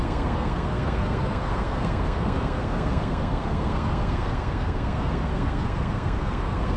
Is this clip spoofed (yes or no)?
yes